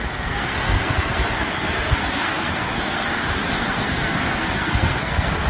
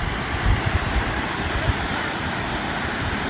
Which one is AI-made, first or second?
first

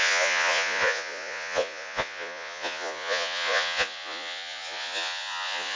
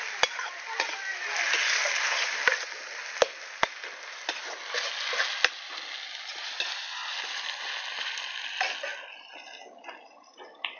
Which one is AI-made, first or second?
first